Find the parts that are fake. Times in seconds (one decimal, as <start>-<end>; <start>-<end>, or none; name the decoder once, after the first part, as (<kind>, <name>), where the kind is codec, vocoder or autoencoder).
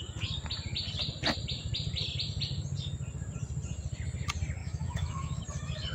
4.6-5.4 (autoencoder, DAC-VAE)